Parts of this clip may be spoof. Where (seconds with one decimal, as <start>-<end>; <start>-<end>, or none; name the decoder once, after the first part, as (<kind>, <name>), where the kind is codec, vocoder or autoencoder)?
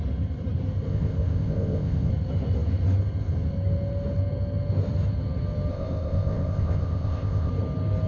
0.9-2.1 (codec, ZipCodec); 5.7-7.5